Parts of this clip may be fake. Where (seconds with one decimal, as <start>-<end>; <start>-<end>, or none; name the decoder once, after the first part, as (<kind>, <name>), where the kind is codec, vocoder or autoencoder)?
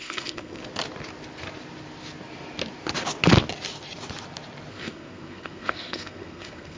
0.0-0.6 (codec, SNAC); 4.7-6.8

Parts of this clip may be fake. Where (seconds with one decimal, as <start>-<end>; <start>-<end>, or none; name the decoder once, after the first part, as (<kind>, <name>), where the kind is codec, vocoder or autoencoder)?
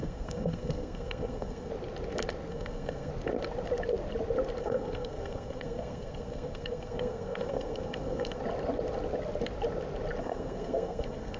0.0-1.7 (codec, SNAC); 2.5-3.1; 4.6-8.4; 10.2-11.4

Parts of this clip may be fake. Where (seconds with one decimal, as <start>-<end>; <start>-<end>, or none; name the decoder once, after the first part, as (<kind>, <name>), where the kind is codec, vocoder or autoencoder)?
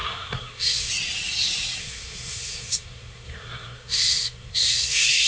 0.0-0.9 (codec, SNAC); 1.8-5.3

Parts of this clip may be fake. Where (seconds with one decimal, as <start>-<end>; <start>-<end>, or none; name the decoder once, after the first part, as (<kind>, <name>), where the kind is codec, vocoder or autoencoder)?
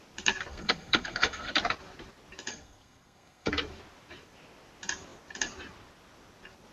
0.5-1.5 (codec, SNAC); 2.5-3.5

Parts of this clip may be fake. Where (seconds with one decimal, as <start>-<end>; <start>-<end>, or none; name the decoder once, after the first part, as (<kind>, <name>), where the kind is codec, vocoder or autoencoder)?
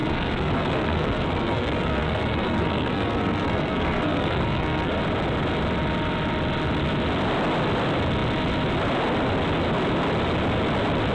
0.0-4.9 (codec, SNAC)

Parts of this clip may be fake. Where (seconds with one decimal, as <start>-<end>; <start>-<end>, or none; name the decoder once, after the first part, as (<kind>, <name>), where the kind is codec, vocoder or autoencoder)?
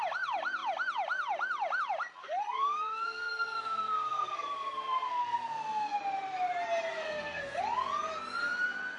2.2-6.0 (codec, SNAC); 6.9-7.6